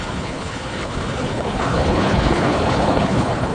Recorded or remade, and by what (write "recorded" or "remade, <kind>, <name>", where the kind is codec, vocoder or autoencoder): remade, codec, HILCodec